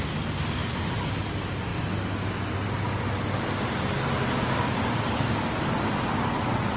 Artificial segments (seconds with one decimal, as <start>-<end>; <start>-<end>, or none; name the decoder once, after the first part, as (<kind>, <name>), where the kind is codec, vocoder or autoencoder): none